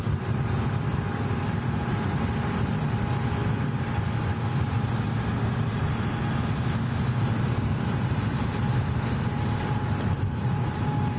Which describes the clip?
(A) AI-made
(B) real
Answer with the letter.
B